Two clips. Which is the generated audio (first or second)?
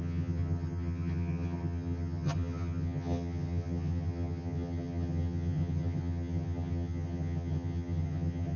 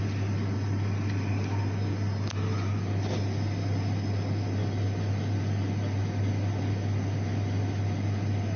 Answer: first